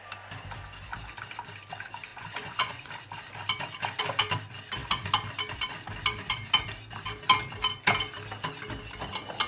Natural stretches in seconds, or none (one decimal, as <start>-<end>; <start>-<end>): 0.0-2.1; 2.9-9.5